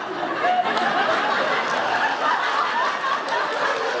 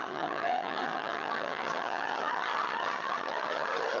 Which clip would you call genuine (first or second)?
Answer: first